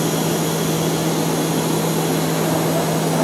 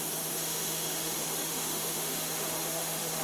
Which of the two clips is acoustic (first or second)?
first